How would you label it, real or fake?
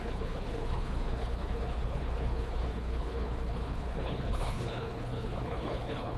fake